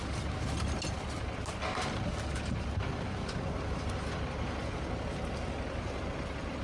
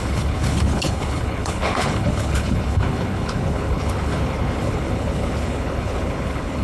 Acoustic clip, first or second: first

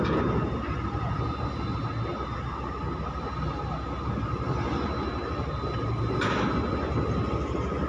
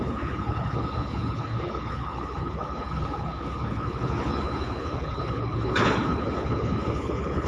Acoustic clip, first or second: first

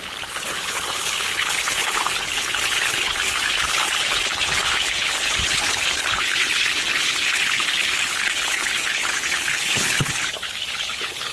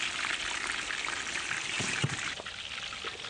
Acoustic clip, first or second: second